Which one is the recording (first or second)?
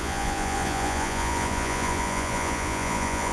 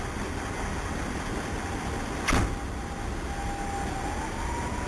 second